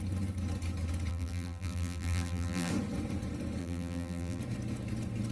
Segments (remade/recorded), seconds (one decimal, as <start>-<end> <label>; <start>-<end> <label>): 0.0-1.1 recorded; 1.1-2.7 remade; 2.7-3.6 recorded; 3.6-4.4 remade; 4.4-5.3 recorded